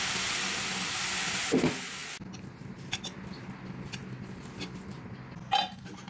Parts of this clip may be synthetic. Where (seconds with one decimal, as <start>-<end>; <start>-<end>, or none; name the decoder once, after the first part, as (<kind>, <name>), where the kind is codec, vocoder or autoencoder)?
none